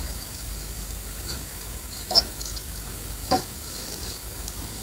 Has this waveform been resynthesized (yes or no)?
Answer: yes